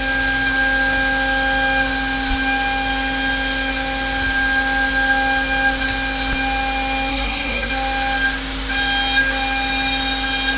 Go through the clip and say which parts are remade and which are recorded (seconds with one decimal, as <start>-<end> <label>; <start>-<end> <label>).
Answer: 0.0-7.1 recorded; 7.1-7.7 remade; 7.7-10.6 recorded